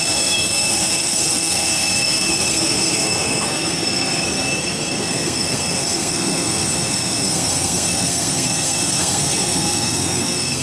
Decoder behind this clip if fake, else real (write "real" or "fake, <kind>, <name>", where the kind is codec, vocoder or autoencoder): fake, codec, SNAC